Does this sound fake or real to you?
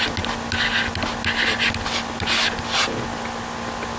real